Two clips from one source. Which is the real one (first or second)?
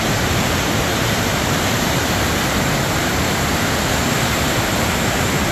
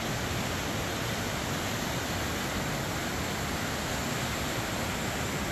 second